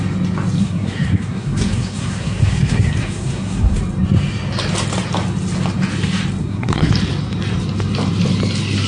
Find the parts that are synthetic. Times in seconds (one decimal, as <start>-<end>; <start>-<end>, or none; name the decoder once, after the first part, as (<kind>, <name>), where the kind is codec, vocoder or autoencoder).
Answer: 0.6-3.8 (codec, SNAC); 6.4-6.9